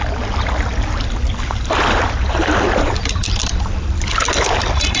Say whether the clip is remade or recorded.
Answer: recorded